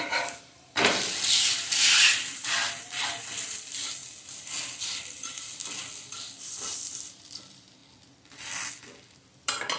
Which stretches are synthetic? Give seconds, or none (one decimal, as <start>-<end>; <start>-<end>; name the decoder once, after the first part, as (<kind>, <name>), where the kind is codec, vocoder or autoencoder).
0.0-2.6 (vocoder, BigVGAN v2); 3.2-4.0; 4.8-7.8; 9.3-9.8